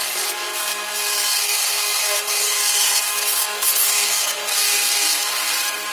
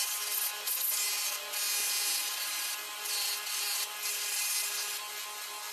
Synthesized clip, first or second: first